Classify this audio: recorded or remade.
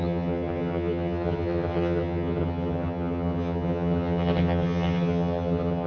remade